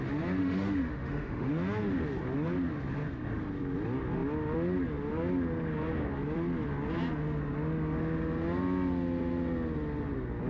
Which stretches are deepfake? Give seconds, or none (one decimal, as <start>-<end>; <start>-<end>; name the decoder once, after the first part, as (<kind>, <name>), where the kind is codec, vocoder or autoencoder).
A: 0.4-1.5 (autoencoder, DAC-VAE)